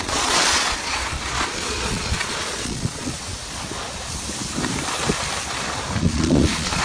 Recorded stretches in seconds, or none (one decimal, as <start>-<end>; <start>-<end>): 3.3-6.0